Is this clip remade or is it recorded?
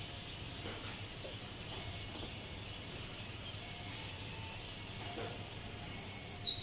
recorded